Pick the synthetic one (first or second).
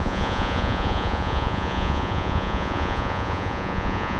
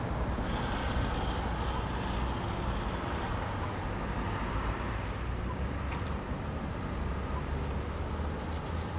first